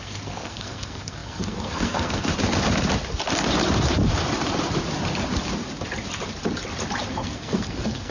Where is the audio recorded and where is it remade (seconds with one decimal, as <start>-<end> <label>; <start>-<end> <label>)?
0.0-2.3 remade; 2.3-7.1 recorded; 7.1-8.1 remade